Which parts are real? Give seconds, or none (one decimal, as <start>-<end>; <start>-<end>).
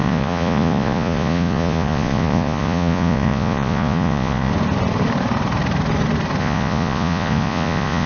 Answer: 4.5-6.4